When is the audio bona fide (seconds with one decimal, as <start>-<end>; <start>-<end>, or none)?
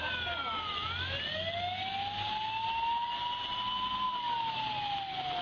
0.0-5.4